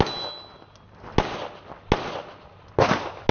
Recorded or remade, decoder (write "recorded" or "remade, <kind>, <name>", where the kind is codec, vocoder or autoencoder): recorded